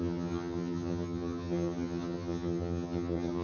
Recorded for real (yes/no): no